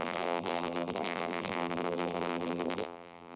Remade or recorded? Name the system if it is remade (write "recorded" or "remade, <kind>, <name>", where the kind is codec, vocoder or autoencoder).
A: remade, vocoder, BigVGAN v2